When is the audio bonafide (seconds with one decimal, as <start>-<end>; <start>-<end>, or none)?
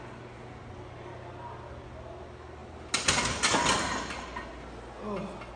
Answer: 0.0-5.6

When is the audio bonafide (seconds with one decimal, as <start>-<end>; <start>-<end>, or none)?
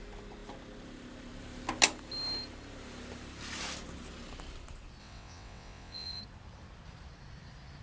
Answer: 0.0-5.0; 6.2-7.8